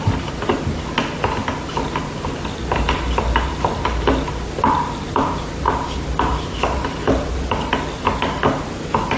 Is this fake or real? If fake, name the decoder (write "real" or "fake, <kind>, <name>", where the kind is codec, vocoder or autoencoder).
real